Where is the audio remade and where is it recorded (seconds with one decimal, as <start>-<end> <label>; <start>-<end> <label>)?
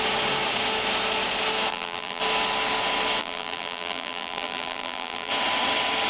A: 0.0-1.7 recorded; 1.7-2.2 remade; 2.2-3.2 recorded; 3.2-5.3 remade; 5.3-6.1 recorded